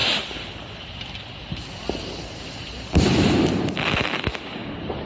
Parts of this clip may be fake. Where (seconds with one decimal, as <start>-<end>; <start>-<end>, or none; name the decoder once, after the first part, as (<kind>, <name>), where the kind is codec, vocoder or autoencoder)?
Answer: none